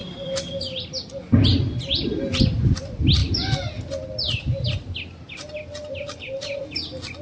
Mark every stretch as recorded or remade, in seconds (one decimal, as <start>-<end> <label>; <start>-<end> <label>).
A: 0.0-7.2 recorded